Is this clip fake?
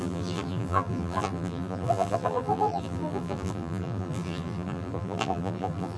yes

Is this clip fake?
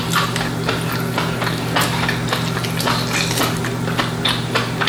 yes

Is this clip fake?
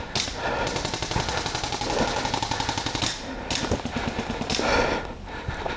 no